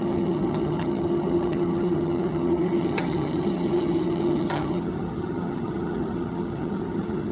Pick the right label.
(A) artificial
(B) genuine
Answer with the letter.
A